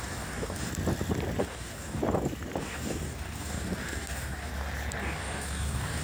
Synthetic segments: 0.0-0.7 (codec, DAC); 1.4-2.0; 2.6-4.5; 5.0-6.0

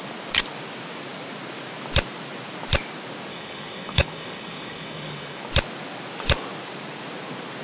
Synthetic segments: 3.3-5.4 (codec, DAC)

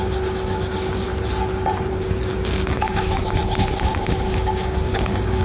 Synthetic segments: 0.0-1.1 (codec, DAC); 1.9-5.4

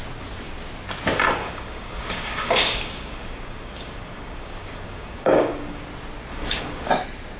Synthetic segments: 1.4-5.8 (codec, DAC); 6.3-6.9